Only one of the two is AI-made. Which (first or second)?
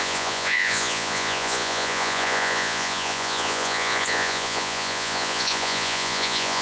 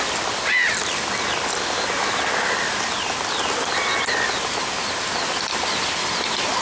first